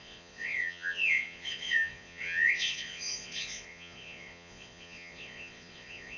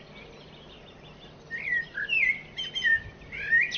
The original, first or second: second